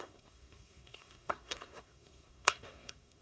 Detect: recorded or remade remade